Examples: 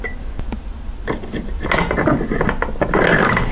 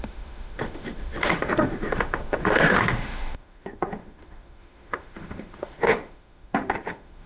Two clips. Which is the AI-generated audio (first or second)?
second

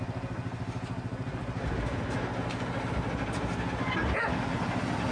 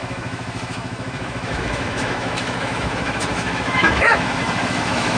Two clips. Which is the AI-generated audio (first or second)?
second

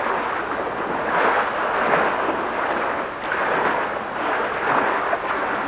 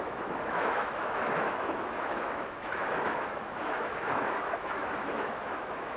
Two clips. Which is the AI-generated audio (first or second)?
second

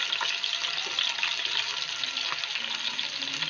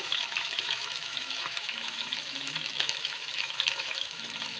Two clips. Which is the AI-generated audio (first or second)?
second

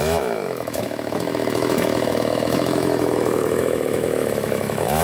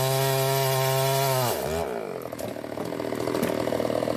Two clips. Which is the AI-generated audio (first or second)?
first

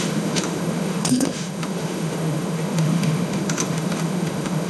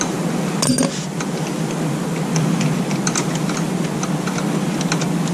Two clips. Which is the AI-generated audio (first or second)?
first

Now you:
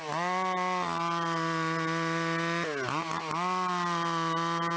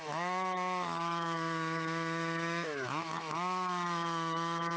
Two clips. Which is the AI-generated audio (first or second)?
second